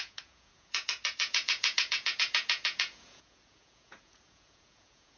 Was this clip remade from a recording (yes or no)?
yes